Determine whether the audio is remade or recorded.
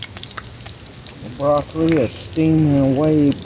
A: recorded